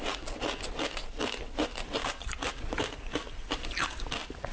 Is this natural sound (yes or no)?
yes